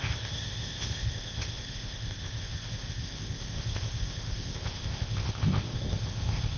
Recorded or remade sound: remade